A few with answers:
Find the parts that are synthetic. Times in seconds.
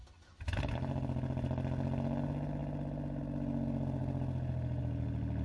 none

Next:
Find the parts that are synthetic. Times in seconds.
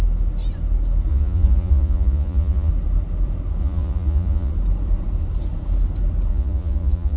1.1-2.7 (vocoder, Vocos); 3.6-4.5; 6.3-7.2